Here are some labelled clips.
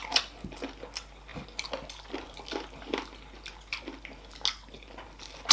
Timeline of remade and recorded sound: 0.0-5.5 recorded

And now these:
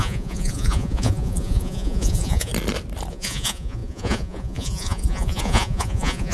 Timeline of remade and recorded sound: 0.0-2.5 remade; 2.5-3.1 recorded; 3.1-6.3 remade